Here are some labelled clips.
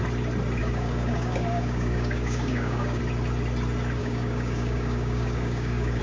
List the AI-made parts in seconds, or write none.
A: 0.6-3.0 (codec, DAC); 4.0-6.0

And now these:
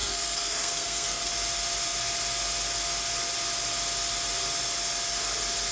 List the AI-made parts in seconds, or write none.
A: 0.0-1.3 (codec, SNAC)